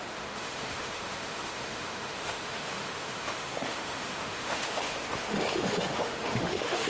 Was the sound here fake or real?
fake